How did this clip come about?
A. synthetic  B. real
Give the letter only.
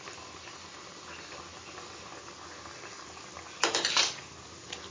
B